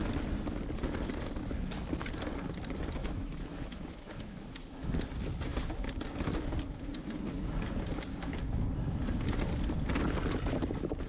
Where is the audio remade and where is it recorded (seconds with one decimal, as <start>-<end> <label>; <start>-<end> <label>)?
0.0-3.0 recorded; 3.0-5.0 remade; 5.0-11.1 recorded